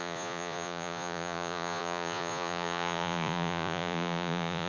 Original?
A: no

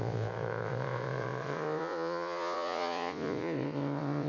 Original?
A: no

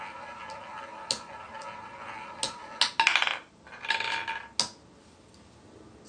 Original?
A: yes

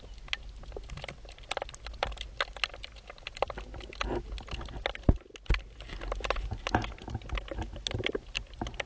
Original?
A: yes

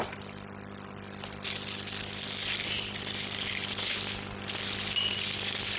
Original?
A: yes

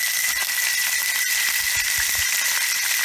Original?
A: yes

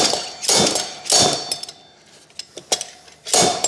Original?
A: yes